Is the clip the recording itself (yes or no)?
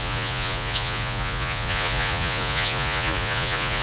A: no